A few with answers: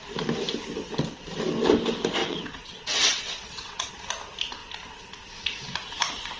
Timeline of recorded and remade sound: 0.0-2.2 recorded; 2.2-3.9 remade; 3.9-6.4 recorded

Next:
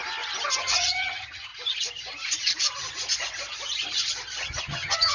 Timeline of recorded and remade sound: 0.0-0.6 recorded; 0.6-1.5 remade; 1.5-4.6 recorded; 4.6-5.1 remade

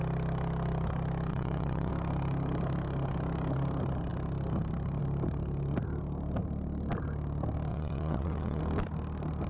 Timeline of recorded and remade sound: 0.0-1.3 recorded; 1.3-1.9 remade; 1.9-7.7 recorded; 7.7-8.6 remade; 8.6-9.5 recorded

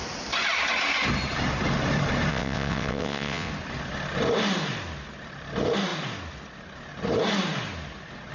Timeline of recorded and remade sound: 0.0-2.3 recorded; 2.3-3.5 remade; 3.5-8.3 recorded

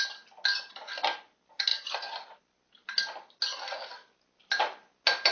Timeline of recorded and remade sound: 0.0-5.3 recorded

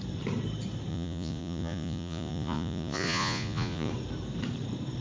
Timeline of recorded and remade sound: 0.0-0.9 recorded; 0.9-3.9 remade; 3.9-5.0 recorded